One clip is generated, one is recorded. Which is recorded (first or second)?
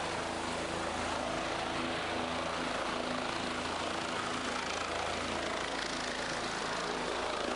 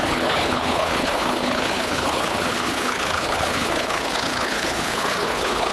first